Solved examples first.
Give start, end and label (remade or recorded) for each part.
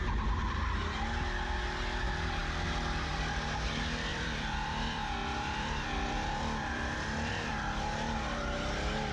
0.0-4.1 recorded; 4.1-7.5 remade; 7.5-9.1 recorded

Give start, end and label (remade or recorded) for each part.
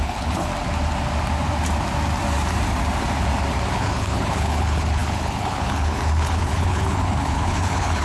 0.0-0.5 remade; 0.5-3.7 recorded; 3.7-8.0 remade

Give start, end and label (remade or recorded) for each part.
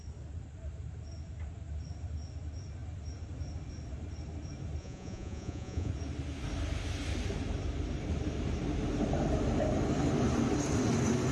0.0-4.8 recorded; 4.8-5.9 remade; 5.9-11.3 recorded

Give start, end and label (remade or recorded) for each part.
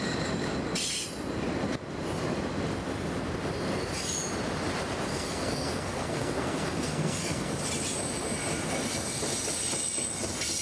0.0-5.1 recorded; 5.1-7.5 remade; 7.5-10.6 recorded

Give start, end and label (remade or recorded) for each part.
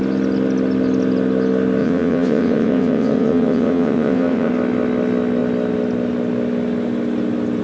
0.0-1.8 recorded; 1.8-4.5 remade; 4.5-7.6 recorded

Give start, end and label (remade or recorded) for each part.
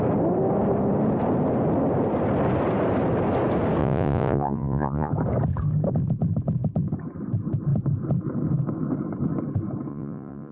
0.0-3.8 recorded; 3.8-5.1 remade; 5.1-9.9 recorded; 9.9-10.5 remade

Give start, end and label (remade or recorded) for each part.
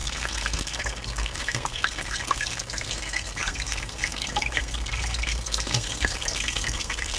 0.0-7.2 remade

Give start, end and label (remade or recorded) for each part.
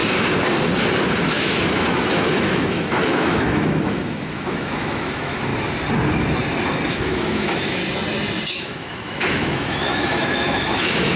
0.0-1.3 recorded; 1.3-5.5 remade; 5.5-6.9 recorded; 6.9-7.8 remade; 7.8-8.5 recorded; 8.5-11.2 remade